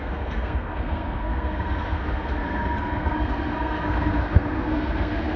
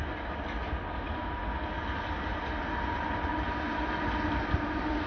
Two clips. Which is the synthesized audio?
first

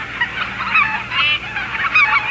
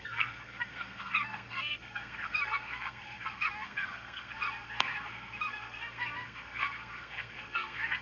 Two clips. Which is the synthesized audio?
second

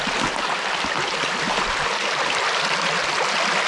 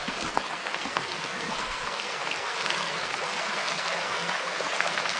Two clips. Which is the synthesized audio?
second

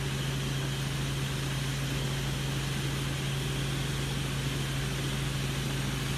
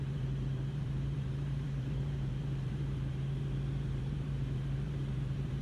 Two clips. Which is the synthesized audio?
second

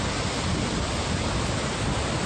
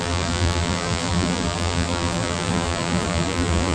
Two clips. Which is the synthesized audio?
second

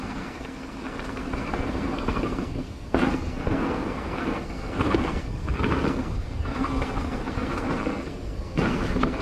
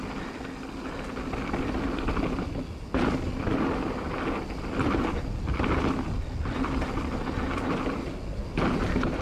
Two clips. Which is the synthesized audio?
first